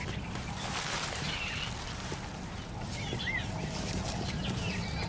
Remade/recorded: recorded